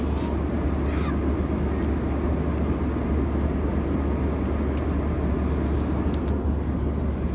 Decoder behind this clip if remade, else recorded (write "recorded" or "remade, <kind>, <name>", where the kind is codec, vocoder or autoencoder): recorded